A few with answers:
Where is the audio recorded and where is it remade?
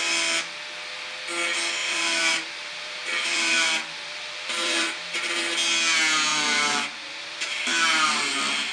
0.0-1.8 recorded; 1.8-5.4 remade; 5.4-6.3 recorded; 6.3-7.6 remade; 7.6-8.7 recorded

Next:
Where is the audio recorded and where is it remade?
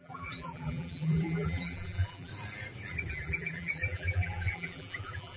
0.0-2.3 remade; 2.3-3.1 recorded; 3.1-5.4 remade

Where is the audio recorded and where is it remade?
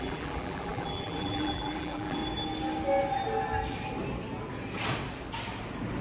0.0-2.2 remade; 2.2-6.0 recorded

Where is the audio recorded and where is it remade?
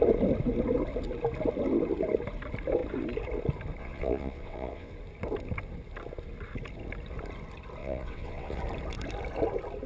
0.0-3.8 recorded; 3.8-4.9 remade; 4.9-7.8 recorded; 7.8-8.6 remade; 8.6-9.9 recorded